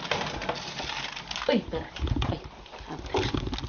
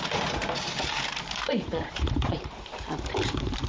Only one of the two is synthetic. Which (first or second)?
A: second